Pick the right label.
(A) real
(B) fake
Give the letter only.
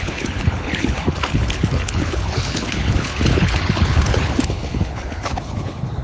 B